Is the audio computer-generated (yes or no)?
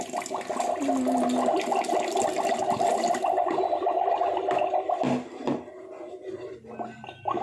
no